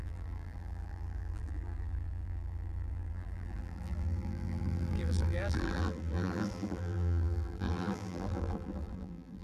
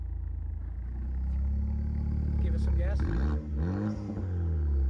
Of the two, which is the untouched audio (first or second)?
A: second